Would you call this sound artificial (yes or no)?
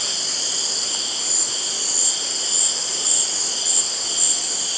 no